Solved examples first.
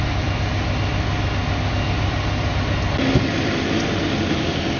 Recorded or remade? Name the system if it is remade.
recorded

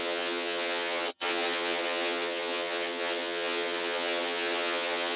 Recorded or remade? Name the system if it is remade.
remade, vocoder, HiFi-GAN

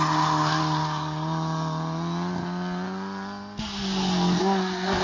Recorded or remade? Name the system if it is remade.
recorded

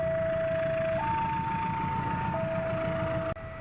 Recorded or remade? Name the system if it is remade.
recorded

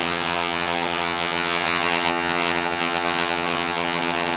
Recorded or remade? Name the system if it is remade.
remade, vocoder, HiFi-GAN